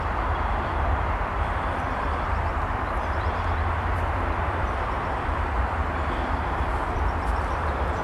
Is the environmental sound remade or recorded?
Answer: remade